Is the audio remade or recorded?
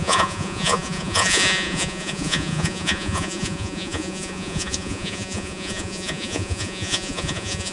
remade